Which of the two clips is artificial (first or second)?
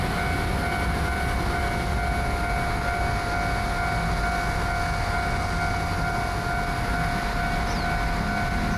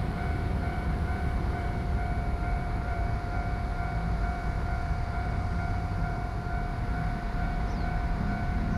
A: second